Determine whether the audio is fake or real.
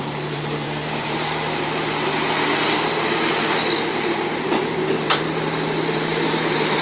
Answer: fake